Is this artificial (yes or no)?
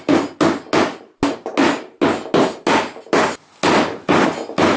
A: no